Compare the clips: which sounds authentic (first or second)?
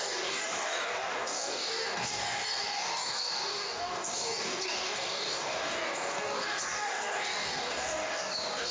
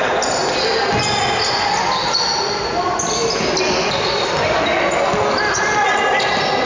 second